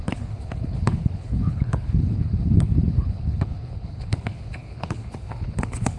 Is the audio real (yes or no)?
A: no